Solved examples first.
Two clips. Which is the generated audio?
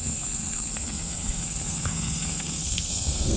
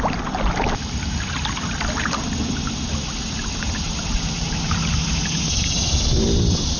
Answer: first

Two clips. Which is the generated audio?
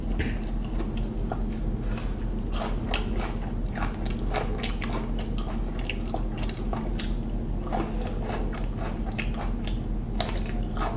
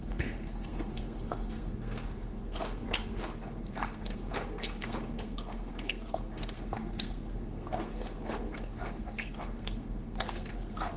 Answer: second